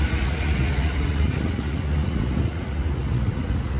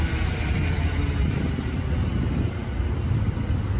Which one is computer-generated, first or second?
first